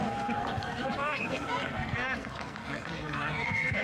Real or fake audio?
fake